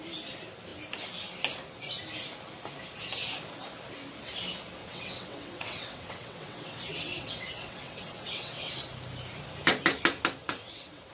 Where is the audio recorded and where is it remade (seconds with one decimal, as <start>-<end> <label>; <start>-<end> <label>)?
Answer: 0.0-4.8 recorded; 4.8-8.7 remade; 8.7-10.4 recorded; 10.4-11.1 remade